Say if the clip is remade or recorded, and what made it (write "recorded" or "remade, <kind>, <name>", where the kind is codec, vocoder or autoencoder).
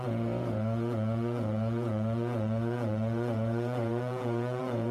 remade, vocoder, Vocos